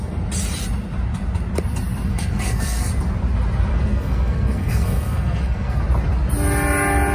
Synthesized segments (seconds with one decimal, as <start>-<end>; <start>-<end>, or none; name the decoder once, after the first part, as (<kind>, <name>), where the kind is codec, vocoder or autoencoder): 2.1-2.9 (codec, SNAC); 3.7-5.8